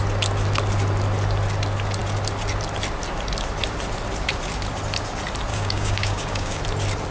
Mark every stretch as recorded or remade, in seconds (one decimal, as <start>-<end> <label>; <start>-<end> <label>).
0.0-5.5 recorded; 5.5-6.6 remade; 6.6-7.1 recorded